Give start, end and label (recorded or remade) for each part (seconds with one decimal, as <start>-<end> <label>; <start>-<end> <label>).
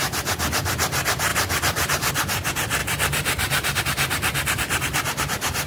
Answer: 0.0-1.3 recorded; 1.3-2.1 remade; 2.1-2.8 recorded; 2.8-3.8 remade; 3.8-5.7 recorded